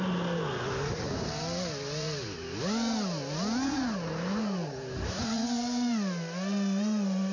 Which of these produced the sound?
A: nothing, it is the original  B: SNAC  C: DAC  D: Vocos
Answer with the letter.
A